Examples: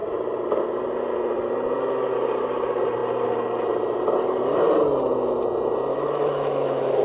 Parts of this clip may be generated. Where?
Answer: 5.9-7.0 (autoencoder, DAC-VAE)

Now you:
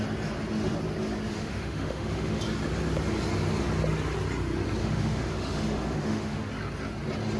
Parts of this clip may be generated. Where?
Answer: 1.3-2.4 (autoencoder, DAC-VAE); 4.8-6.5

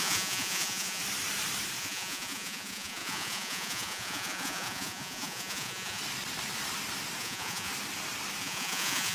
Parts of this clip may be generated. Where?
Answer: 0.0-1.0 (vocoder, Vocos); 1.8-6.0; 7.2-7.7; 8.4-9.1